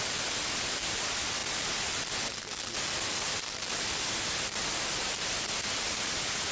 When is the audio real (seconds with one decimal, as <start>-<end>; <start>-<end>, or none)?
0.0-6.5